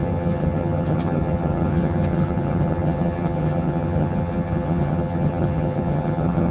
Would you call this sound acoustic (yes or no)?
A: no